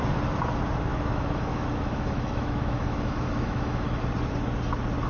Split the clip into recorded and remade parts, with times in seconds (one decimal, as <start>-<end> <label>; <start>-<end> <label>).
0.0-0.9 recorded; 0.9-4.0 remade; 4.0-5.1 recorded

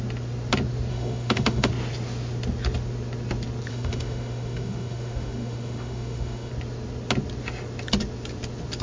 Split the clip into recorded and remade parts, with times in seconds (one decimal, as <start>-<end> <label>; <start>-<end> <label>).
0.0-0.9 recorded; 0.9-1.7 remade; 1.7-3.7 recorded; 3.7-6.5 remade; 6.5-8.8 recorded